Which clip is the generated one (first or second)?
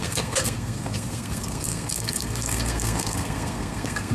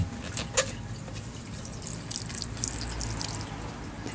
first